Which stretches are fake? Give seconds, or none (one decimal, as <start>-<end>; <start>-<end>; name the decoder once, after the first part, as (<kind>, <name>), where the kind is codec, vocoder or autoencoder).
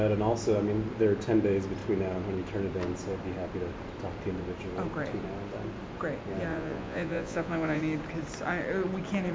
6.5-7.8 (vocoder, Vocos)